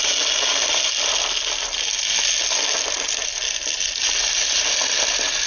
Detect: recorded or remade recorded